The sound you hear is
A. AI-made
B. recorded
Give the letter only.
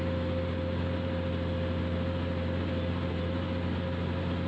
B